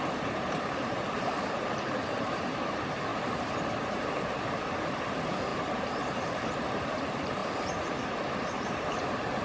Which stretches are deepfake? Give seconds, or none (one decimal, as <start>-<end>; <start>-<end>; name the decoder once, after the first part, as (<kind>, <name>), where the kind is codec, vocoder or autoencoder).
0.0-7.4 (vocoder, BigVGAN v2); 8.4-9.4